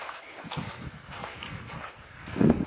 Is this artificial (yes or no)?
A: yes